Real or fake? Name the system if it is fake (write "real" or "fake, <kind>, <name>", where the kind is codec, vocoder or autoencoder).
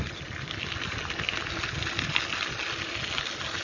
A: real